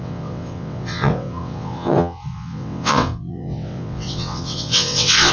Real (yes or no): no